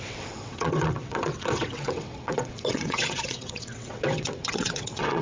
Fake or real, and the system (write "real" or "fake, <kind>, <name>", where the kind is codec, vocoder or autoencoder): fake, vocoder, WaveNeXt